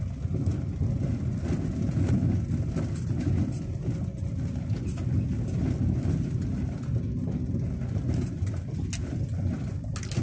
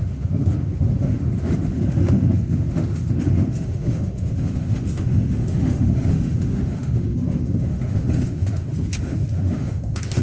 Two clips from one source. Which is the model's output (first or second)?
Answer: second